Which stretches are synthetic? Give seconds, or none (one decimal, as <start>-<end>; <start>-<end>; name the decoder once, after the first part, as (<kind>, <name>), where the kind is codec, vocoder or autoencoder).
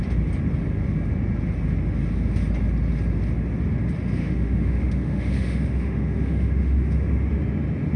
4.2-7.3 (autoencoder, DAC-VAE)